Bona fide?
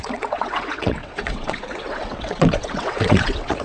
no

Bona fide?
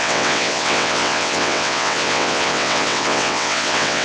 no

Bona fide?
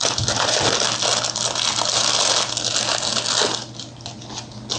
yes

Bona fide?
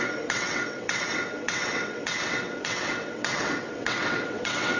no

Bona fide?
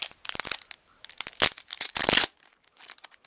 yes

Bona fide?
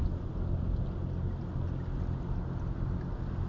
yes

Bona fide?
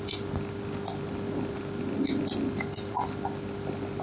yes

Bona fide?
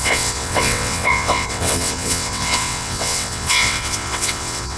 no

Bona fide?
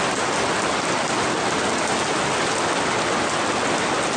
yes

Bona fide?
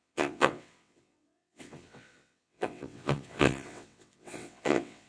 no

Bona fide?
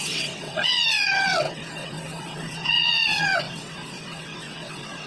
no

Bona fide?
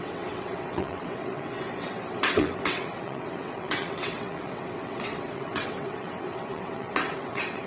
no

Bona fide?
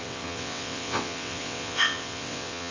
no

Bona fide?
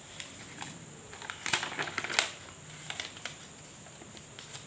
yes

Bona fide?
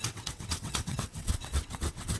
no